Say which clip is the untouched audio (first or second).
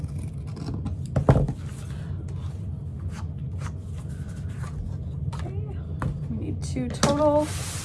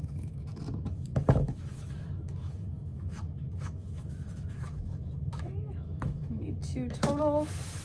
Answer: first